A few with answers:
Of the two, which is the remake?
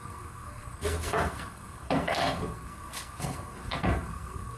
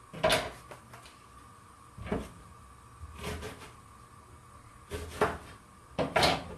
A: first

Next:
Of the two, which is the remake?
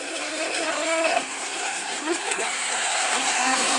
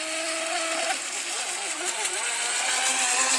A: first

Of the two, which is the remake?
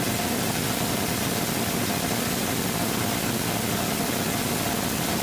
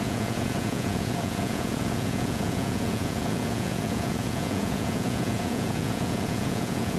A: second